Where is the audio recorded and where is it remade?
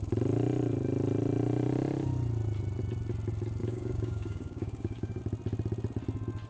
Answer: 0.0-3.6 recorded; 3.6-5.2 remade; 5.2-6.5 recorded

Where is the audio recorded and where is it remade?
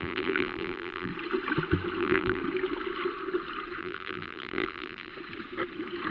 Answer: 0.0-1.1 remade; 1.1-2.0 recorded; 2.0-2.4 remade; 2.4-3.8 recorded; 3.8-5.1 remade; 5.1-6.1 recorded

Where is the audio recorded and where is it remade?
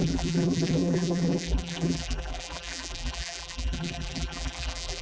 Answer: 0.0-5.0 remade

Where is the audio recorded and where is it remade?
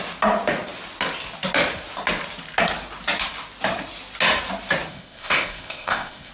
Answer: 0.0-4.9 recorded; 4.9-6.3 remade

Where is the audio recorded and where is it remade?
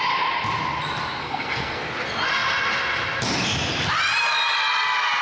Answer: 0.0-1.2 recorded; 1.2-1.9 remade; 1.9-5.2 recorded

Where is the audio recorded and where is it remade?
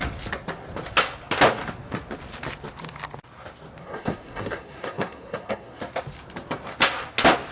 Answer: 0.0-3.8 recorded; 3.8-5.8 remade; 5.8-7.5 recorded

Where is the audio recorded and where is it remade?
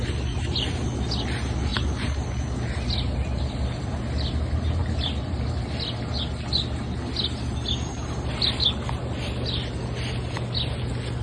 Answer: 0.0-11.2 recorded